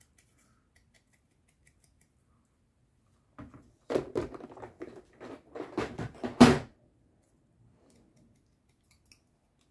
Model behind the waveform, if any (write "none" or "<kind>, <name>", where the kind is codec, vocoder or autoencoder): none